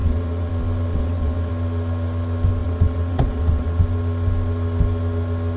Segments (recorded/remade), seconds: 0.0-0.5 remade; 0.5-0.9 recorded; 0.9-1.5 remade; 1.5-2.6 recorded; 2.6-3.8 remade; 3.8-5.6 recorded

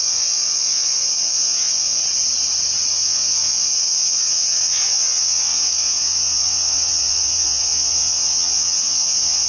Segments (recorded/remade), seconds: 0.0-2.0 remade; 2.0-2.9 recorded; 2.9-9.5 remade